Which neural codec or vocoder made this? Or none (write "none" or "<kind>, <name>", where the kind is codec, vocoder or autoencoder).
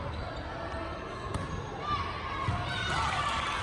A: none